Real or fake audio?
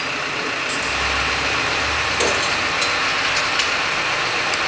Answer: real